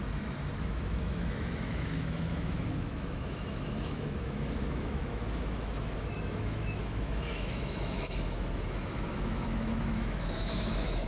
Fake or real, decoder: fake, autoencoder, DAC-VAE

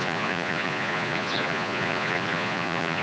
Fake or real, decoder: fake, vocoder, Vocos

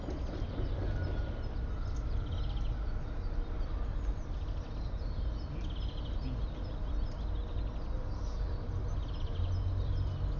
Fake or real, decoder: real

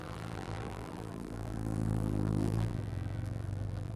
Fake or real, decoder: fake, vocoder, BigVGAN v2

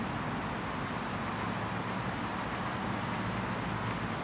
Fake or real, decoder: real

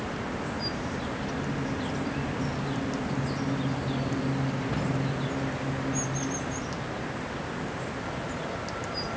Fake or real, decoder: real